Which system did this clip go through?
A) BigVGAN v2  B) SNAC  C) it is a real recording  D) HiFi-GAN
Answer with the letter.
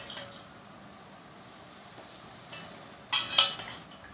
C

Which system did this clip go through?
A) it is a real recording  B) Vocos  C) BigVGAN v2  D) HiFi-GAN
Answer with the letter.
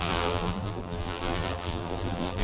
C